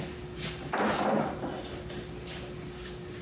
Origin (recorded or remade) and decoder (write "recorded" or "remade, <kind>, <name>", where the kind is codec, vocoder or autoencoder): recorded